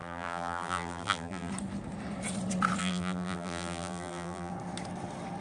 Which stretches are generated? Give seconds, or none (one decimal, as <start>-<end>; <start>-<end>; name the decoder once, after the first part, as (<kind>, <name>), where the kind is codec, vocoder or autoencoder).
0.0-1.5 (vocoder, BigVGAN v2); 2.8-4.5